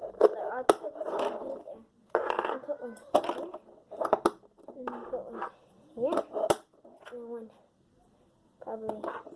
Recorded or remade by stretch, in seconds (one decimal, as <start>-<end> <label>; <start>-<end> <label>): 0.0-9.4 recorded